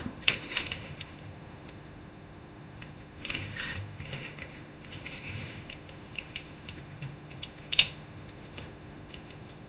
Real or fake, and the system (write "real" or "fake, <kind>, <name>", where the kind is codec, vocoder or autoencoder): fake, autoencoder, DAC-VAE